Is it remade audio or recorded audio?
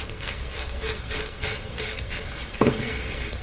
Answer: remade